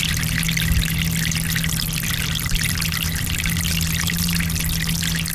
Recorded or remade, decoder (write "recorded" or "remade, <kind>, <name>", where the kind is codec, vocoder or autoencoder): recorded